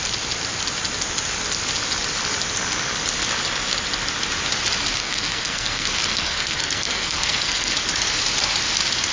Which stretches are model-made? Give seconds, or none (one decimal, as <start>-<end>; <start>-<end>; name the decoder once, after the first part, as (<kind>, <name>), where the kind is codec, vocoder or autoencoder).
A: 5.0-7.7 (codec, SNAC)